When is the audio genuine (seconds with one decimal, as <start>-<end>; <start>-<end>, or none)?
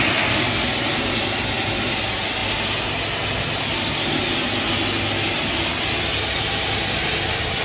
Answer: 0.0-7.6